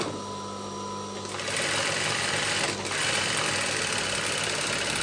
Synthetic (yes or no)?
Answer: no